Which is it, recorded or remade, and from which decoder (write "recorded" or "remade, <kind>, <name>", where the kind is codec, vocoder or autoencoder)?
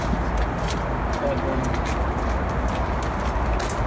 recorded